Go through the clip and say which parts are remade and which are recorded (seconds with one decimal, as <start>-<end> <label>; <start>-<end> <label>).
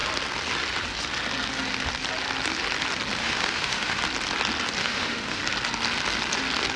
0.0-3.2 recorded; 3.2-4.0 remade; 4.0-4.8 recorded; 4.8-5.4 remade; 5.4-6.8 recorded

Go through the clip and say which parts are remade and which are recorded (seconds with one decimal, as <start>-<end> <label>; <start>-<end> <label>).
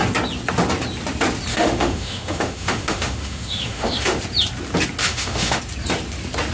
0.0-1.5 recorded; 1.5-4.2 remade; 4.2-5.0 recorded; 5.0-5.6 remade; 5.6-6.5 recorded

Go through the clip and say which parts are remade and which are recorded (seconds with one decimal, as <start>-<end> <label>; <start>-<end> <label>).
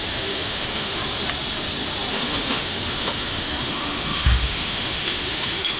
0.0-1.0 remade; 1.0-2.1 recorded; 2.1-5.8 remade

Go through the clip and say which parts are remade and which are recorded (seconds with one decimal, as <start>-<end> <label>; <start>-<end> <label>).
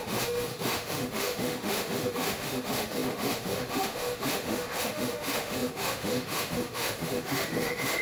0.0-8.0 remade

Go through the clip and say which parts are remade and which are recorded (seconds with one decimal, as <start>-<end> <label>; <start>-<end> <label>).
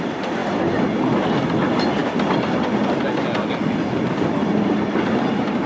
0.0-5.7 recorded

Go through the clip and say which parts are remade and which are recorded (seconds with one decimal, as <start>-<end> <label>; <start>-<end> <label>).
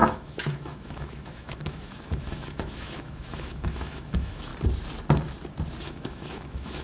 0.0-4.5 remade; 4.5-5.8 recorded; 5.8-6.8 remade